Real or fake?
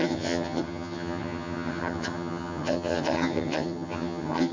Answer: fake